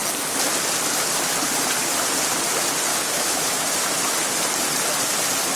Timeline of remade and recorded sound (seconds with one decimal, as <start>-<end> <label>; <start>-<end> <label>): 0.0-2.9 recorded; 2.9-3.6 remade; 3.6-5.6 recorded